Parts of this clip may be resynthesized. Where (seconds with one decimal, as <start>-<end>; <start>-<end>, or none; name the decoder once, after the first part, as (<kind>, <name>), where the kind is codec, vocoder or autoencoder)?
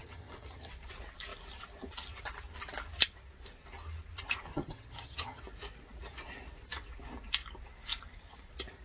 0.0-0.7 (vocoder, HiFi-GAN); 4.5-5.4